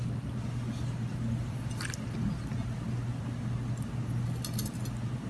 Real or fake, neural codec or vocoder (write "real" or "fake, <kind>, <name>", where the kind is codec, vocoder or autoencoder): real